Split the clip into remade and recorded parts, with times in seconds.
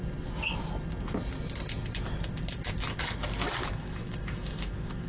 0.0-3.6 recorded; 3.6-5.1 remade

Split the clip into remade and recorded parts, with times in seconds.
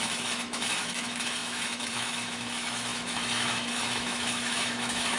0.0-5.2 remade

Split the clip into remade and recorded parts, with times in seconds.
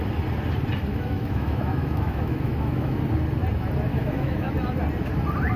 0.0-0.9 recorded; 0.9-3.0 remade; 3.0-3.9 recorded; 3.9-4.5 remade; 4.5-5.6 recorded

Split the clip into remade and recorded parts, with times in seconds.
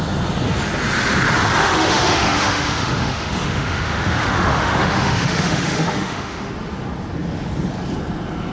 0.0-1.6 recorded; 1.6-6.5 remade; 6.5-8.5 recorded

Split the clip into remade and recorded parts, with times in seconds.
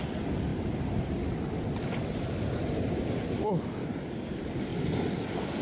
0.0-5.6 recorded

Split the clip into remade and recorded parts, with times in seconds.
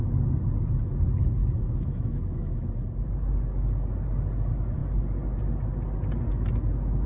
0.0-1.4 recorded; 1.4-2.7 remade; 2.7-7.1 recorded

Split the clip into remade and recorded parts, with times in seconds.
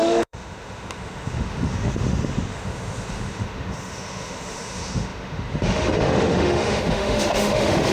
0.0-7.9 remade